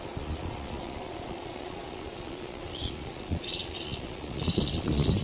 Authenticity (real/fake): fake